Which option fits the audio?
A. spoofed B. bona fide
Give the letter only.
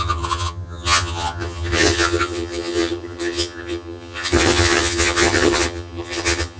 A